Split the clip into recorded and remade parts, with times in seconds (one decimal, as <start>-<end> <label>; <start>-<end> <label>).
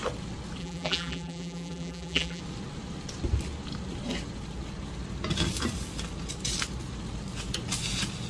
0.0-0.6 recorded; 0.6-2.4 remade; 2.4-8.3 recorded